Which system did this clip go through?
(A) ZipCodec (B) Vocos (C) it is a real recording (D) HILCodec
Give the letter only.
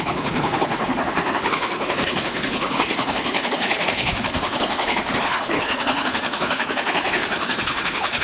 D